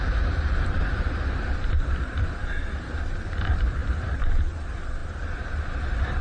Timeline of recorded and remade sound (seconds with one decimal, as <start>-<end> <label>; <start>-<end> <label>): 0.0-5.0 remade; 5.0-5.8 recorded; 5.8-6.2 remade